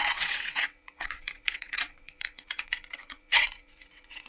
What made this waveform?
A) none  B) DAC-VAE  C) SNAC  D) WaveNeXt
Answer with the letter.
D